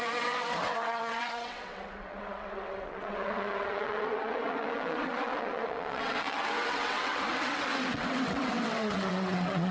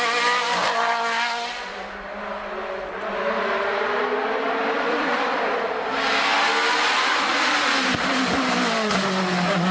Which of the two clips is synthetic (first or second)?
first